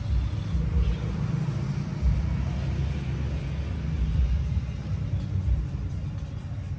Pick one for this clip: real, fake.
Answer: real